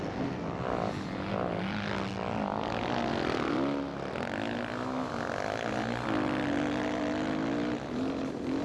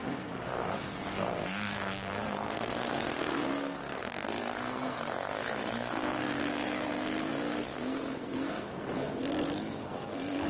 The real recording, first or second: first